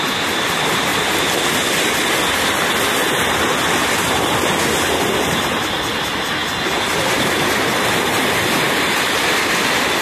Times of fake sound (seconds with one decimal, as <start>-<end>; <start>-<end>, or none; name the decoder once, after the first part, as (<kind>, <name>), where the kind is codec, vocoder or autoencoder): 0.0-0.9 (vocoder, BigVGAN v2); 3.3-6.4; 7.0-10.0